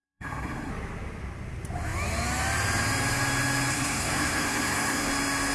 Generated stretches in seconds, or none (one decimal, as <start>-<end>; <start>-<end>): 0.0-0.7; 3.7-5.1